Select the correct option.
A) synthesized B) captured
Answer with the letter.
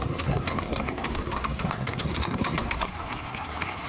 A